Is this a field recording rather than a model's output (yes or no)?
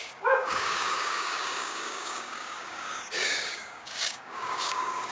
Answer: no